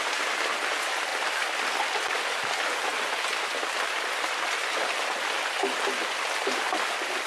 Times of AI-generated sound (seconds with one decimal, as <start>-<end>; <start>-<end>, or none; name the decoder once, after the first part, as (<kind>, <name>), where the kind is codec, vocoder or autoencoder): 1.1-2.2 (vocoder, BigVGAN v2)